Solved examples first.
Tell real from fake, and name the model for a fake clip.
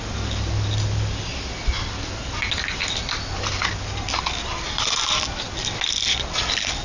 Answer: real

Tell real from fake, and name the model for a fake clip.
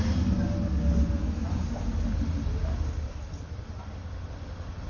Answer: real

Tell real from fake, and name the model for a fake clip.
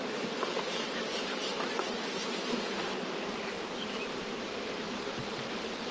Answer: fake, vocoder, BigVGAN v2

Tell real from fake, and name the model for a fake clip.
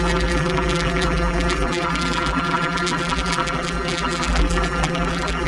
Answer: fake, vocoder, BigVGAN v2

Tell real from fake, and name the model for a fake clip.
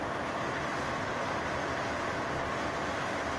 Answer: real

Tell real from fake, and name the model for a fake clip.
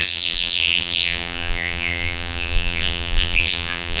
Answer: fake, vocoder, BigVGAN v2